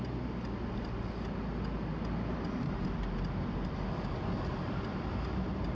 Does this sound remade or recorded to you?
recorded